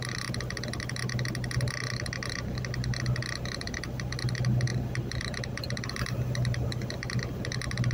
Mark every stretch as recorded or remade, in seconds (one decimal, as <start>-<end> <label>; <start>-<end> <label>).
0.0-7.9 recorded